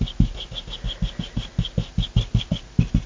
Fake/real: real